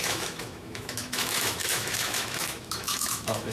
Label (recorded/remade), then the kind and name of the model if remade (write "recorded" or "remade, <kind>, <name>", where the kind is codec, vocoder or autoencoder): remade, autoencoder, DAC-VAE